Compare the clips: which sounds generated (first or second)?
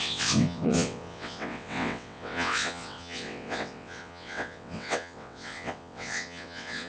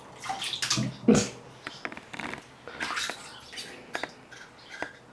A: first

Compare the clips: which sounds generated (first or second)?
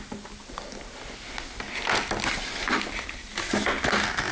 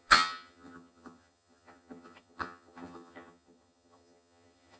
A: second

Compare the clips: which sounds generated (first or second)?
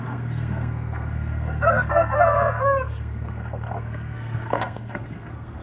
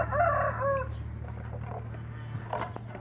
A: first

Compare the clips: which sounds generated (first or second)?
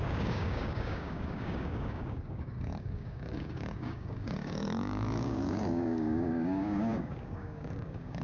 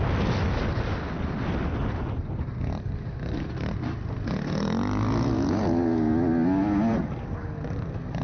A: first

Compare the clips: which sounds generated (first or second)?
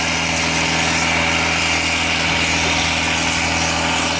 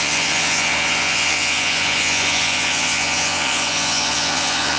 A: second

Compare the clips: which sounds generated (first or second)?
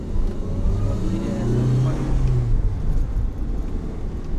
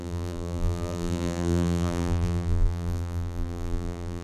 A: second